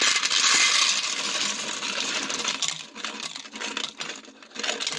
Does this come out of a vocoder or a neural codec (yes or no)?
no